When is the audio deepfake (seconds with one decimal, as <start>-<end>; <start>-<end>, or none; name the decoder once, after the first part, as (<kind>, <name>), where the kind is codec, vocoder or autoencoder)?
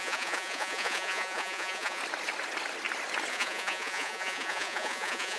0.0-2.0 (vocoder, Vocos); 3.3-5.4